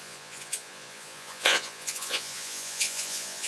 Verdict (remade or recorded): remade